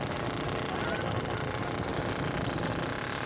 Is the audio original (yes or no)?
yes